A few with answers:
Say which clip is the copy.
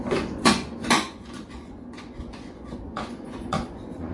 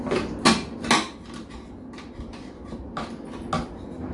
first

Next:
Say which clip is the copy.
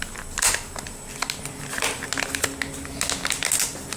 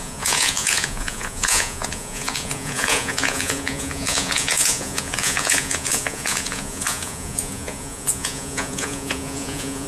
second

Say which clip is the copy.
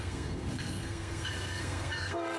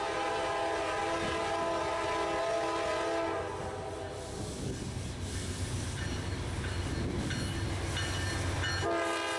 first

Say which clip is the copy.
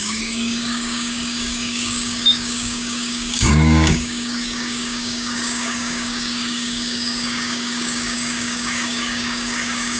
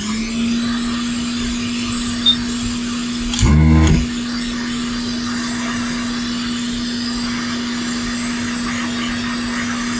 first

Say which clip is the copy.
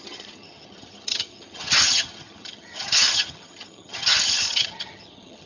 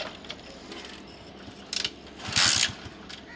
first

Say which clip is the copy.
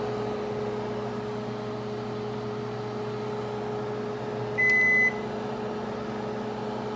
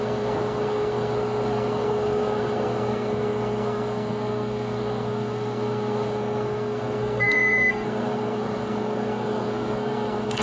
second